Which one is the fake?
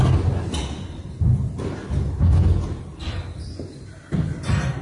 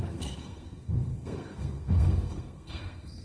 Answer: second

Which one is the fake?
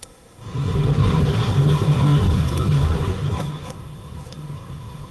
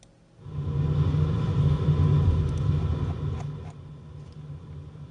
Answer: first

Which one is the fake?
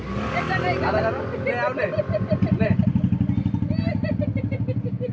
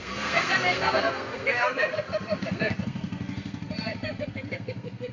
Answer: second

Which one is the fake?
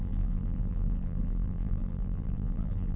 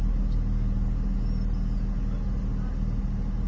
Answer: first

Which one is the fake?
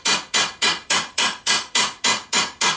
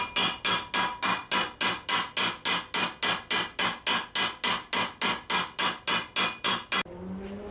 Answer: first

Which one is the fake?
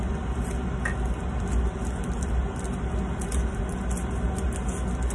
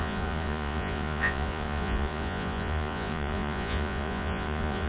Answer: second